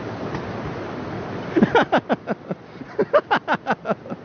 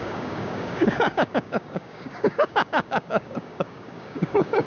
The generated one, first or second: second